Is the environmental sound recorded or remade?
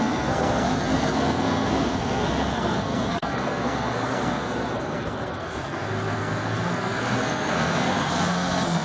remade